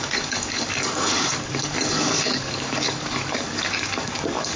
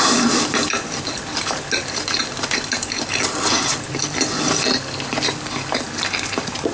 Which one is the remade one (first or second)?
first